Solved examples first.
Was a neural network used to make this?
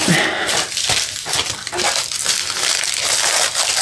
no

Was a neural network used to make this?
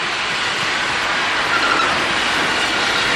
no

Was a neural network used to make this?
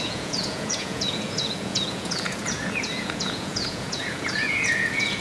yes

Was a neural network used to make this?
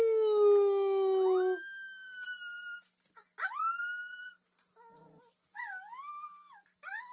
no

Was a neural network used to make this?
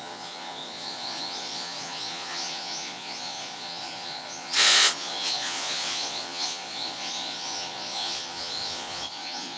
yes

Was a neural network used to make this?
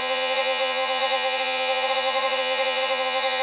yes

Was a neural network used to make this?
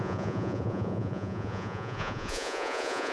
yes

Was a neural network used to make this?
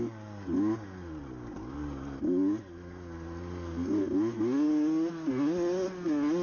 no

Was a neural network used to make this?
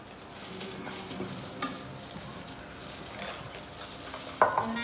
no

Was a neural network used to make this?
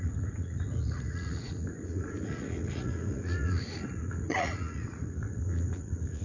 yes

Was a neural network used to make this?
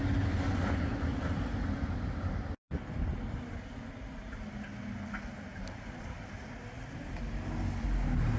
no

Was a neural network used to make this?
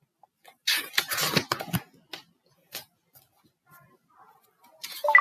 no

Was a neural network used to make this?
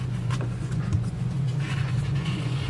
yes